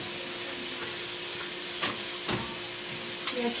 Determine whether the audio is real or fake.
real